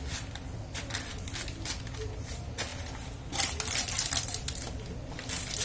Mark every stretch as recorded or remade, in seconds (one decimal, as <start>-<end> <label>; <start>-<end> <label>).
0.0-5.6 recorded